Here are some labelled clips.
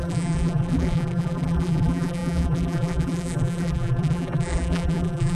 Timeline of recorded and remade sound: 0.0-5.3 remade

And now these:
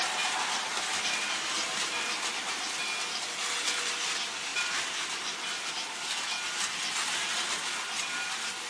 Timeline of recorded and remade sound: 0.0-4.5 recorded; 4.5-5.7 remade; 5.7-8.7 recorded

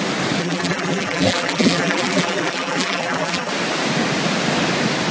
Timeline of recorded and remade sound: 0.0-0.4 recorded; 0.4-3.5 remade; 3.5-5.1 recorded

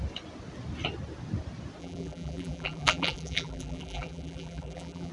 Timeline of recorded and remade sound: 0.0-1.8 recorded; 1.8-5.1 remade

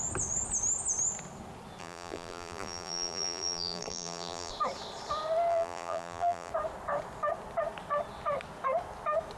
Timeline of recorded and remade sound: 0.0-1.8 recorded; 1.8-4.5 remade; 4.5-5.5 recorded; 5.5-6.5 remade; 6.5-9.4 recorded